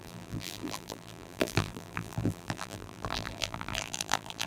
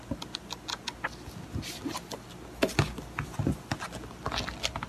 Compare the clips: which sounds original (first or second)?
second